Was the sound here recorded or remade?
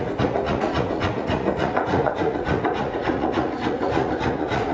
remade